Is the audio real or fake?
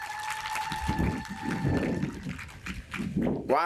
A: real